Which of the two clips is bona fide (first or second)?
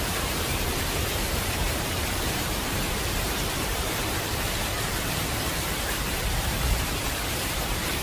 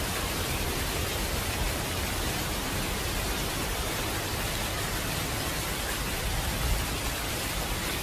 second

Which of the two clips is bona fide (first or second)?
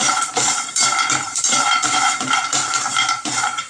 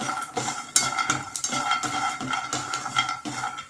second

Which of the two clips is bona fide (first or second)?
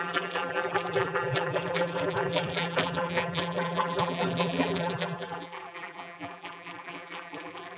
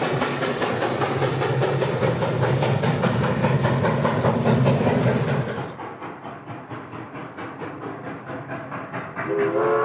second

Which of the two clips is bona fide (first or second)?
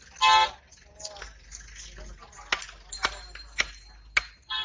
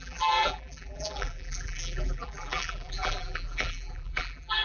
first